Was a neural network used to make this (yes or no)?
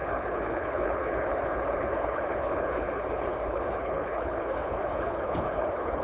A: yes